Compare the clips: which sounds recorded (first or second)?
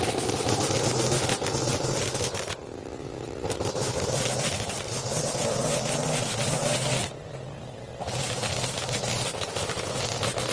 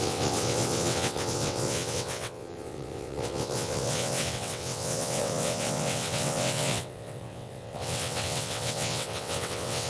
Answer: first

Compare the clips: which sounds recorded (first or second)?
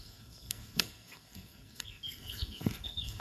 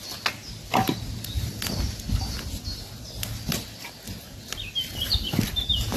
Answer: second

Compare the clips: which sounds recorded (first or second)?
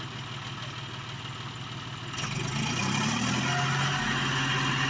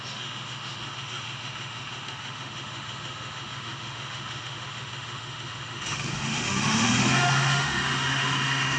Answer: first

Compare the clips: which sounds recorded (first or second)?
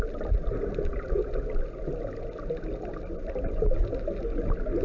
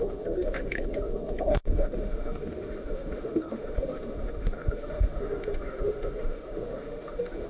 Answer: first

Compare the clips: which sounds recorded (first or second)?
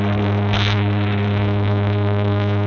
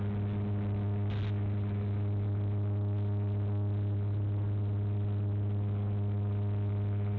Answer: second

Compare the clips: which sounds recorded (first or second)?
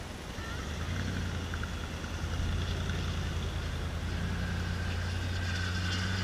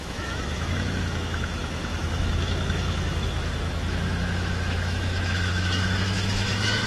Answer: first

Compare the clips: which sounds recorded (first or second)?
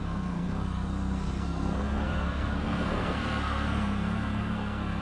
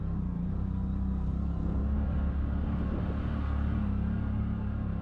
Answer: second